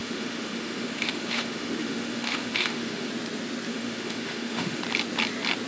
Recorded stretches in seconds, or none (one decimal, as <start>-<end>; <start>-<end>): 3.1-3.7; 4.8-5.7